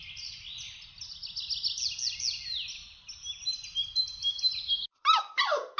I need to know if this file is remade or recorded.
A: recorded